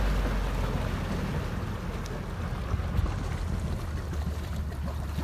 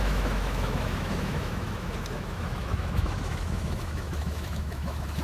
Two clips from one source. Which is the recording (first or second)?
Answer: first